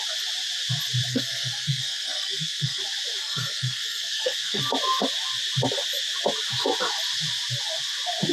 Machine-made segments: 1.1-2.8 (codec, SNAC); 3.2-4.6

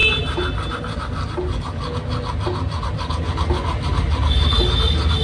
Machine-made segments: none

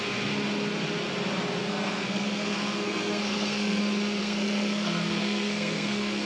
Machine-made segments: 1.6-3.8 (codec, SNAC); 4.2-6.3

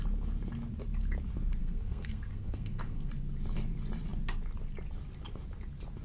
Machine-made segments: 1.6-3.1 (codec, SNAC)

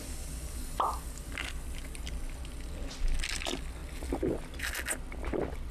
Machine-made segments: none

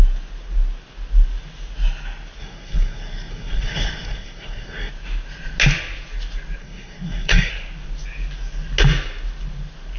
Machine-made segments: 2.4-4.9 (codec, SNAC); 6.6-7.5

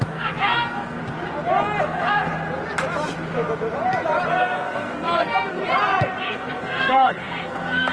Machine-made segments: 0.0-1.0 (codec, SNAC); 1.8-2.3; 4.3-5.6; 6.2-7.9

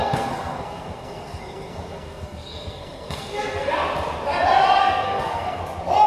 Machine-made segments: 0.0-3.7 (codec, SNAC); 4.8-5.6